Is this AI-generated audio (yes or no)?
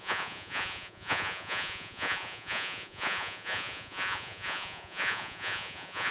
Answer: yes